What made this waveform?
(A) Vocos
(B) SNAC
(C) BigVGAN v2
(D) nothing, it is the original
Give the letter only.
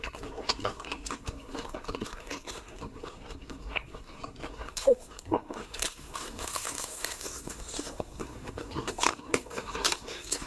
B